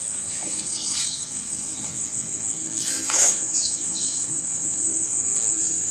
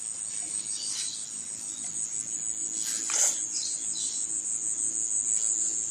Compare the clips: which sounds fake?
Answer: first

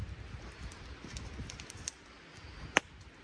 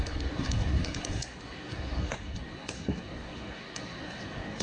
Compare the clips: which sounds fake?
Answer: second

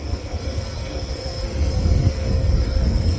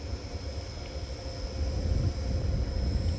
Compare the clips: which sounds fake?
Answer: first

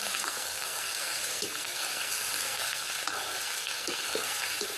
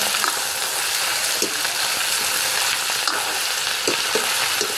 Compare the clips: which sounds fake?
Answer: first